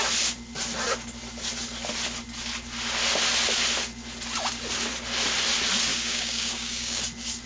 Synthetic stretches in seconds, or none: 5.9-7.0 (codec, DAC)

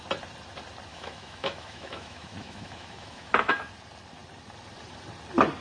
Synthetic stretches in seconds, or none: 0.9-3.7 (autoencoder, DAC-VAE)